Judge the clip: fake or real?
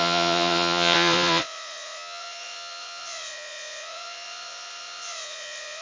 fake